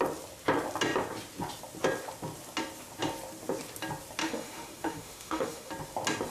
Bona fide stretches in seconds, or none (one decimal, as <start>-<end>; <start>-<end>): 0.0-4.2; 5.7-6.3